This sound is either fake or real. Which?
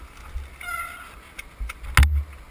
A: real